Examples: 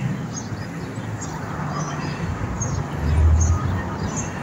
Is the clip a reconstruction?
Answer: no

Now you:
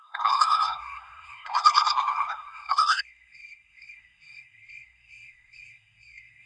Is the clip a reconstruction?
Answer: yes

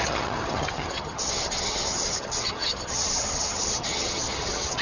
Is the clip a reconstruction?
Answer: yes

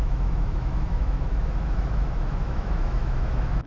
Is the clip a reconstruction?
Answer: yes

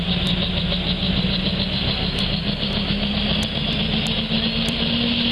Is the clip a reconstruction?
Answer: no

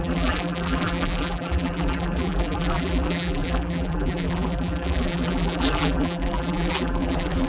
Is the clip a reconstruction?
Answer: yes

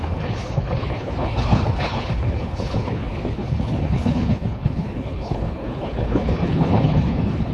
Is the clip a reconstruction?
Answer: yes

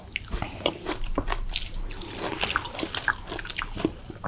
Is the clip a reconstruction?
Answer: no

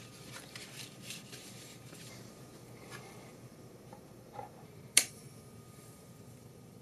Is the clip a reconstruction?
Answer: yes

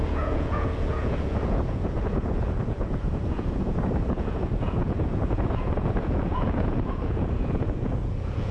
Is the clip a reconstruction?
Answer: yes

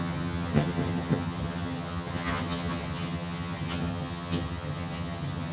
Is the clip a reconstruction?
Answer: yes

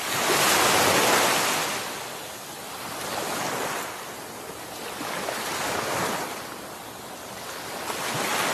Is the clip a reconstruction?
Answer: no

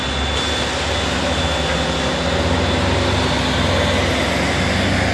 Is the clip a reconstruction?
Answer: no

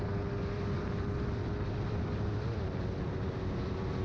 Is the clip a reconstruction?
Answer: yes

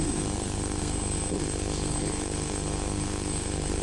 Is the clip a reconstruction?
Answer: yes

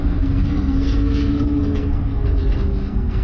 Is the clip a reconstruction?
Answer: yes